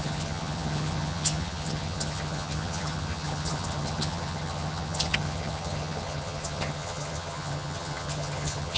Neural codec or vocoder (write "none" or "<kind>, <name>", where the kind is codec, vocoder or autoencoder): vocoder, HiFi-GAN